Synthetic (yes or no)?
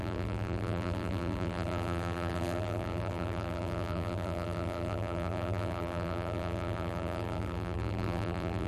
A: yes